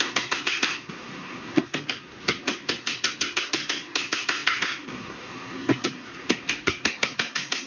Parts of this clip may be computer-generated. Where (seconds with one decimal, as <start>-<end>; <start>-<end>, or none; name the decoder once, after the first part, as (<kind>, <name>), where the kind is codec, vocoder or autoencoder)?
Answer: 0.0-7.7 (codec, SNAC)